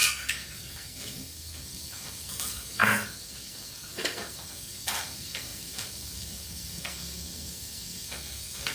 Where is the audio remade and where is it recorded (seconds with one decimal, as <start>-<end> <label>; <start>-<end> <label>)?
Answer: 0.0-8.7 remade